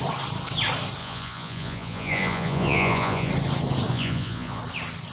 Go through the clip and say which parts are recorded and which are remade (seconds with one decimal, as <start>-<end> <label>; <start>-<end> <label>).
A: 0.0-1.0 recorded; 1.0-3.3 remade; 3.3-3.9 recorded; 3.9-4.6 remade; 4.6-5.1 recorded

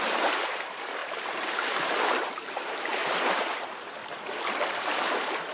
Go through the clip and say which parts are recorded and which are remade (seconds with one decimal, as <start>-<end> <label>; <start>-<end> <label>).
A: 0.0-4.0 remade; 4.0-4.7 recorded; 4.7-5.5 remade